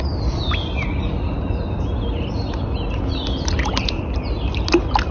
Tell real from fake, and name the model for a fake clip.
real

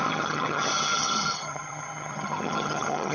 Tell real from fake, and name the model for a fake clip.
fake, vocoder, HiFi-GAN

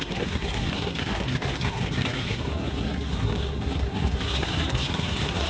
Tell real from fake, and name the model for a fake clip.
fake, codec, SNAC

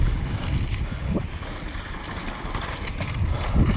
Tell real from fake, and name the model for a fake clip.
real